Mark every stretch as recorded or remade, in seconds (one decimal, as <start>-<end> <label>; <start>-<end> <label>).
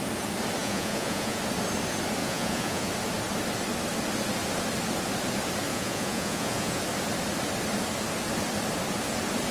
0.0-0.6 recorded; 0.6-1.4 remade; 1.4-2.2 recorded; 2.2-2.9 remade; 2.9-5.7 recorded; 5.7-6.8 remade; 6.8-9.5 recorded